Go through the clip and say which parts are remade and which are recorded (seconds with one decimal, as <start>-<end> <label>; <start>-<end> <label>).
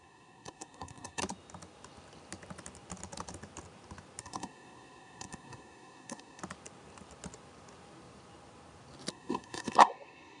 0.0-1.2 remade; 1.2-4.2 recorded; 4.2-6.4 remade; 6.4-9.1 recorded; 9.1-10.4 remade